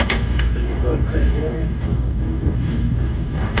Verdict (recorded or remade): remade